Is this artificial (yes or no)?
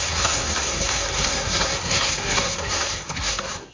yes